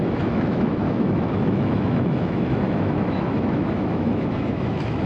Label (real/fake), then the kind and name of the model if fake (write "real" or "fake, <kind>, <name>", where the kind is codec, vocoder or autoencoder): fake, autoencoder, DAC-VAE